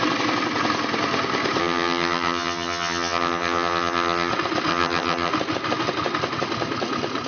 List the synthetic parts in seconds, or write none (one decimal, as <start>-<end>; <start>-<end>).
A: 1.6-4.3; 4.7-5.3